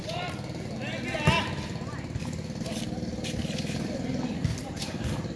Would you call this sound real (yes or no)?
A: yes